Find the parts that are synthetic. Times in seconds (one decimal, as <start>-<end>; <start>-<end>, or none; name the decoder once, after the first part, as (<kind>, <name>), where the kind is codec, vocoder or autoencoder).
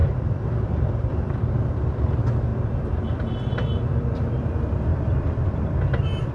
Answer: 0.0-1.8 (vocoder, BigVGAN v2); 2.5-4.4; 4.9-6.3